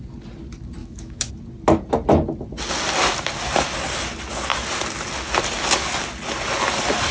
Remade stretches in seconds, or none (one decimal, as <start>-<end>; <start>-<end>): 0.8-1.3